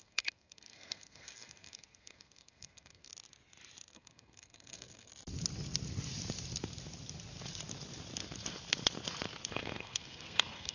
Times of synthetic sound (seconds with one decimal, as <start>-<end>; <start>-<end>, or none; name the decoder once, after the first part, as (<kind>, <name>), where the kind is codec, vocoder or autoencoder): 0.0-3.1 (codec, SNAC); 3.9-5.1; 9.5-10.7